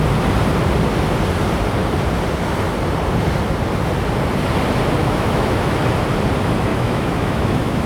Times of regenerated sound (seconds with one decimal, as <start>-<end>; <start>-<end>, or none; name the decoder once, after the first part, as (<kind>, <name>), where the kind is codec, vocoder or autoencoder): 5.0-5.8 (autoencoder, DAC-VAE); 6.7-7.9